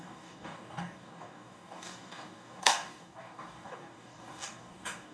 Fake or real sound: fake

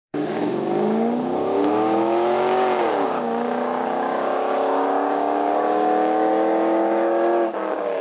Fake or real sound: fake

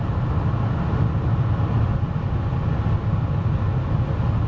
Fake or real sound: real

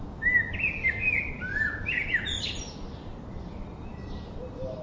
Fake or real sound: real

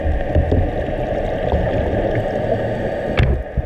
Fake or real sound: real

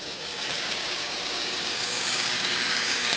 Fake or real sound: fake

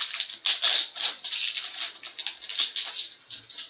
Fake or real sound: real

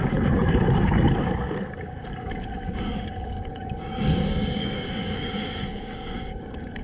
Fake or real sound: fake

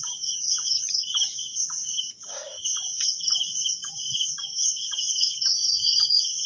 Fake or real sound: fake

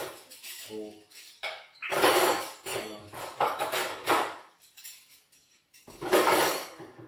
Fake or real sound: fake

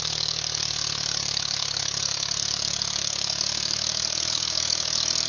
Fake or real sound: fake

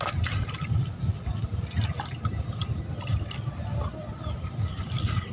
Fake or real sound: real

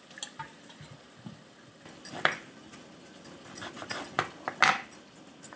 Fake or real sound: real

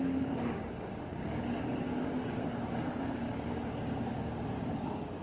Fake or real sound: fake